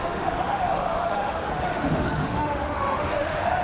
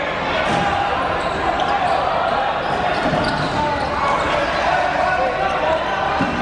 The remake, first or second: first